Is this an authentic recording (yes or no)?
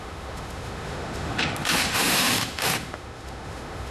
no